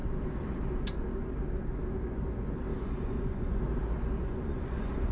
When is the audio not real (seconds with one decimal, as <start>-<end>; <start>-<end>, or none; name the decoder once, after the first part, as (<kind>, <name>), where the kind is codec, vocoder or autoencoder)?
2.7-3.6 (vocoder, Vocos); 4.2-5.1